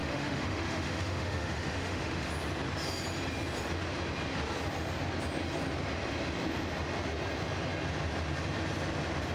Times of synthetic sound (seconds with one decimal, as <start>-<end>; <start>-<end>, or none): 0.0-2.3